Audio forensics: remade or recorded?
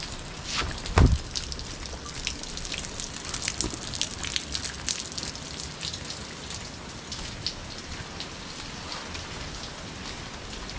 recorded